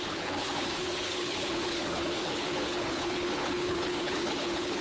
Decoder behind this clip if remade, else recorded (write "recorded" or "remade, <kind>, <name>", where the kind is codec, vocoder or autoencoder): remade, codec, HILCodec